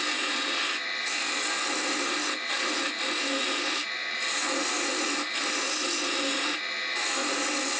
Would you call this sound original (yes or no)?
yes